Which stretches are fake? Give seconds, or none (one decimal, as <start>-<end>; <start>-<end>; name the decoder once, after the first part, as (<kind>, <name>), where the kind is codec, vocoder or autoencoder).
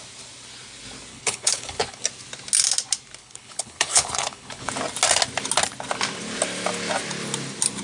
1.1-2.0 (codec, HILCodec); 3.2-4.7